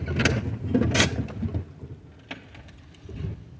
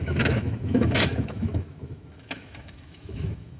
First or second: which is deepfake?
second